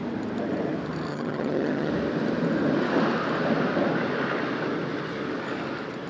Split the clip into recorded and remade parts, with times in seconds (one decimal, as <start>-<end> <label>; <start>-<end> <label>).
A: 0.0-1.1 recorded; 1.1-1.9 remade; 1.9-6.1 recorded